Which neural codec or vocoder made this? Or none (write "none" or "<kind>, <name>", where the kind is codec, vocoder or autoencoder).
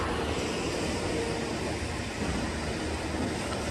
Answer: none